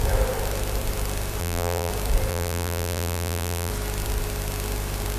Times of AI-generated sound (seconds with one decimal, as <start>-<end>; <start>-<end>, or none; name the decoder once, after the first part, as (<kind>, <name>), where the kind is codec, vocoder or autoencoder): 1.4-1.9 (vocoder, BigVGAN v2); 2.3-3.7